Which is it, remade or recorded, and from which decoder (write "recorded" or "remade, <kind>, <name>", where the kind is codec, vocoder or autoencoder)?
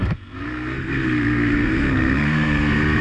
remade, codec, SNAC